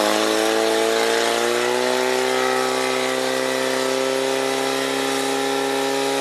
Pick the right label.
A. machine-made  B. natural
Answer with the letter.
B